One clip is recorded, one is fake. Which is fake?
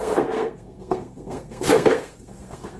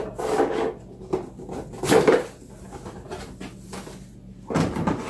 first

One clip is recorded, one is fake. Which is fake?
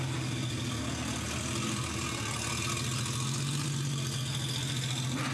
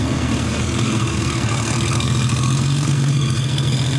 second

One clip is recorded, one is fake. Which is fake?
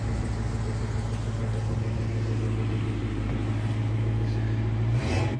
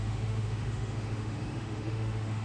second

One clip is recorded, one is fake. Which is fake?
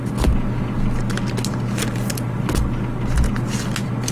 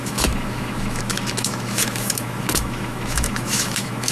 second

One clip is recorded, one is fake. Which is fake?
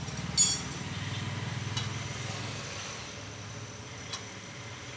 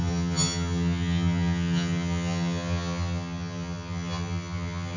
second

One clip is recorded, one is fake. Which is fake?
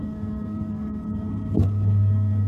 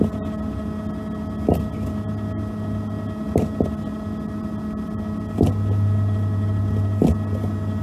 first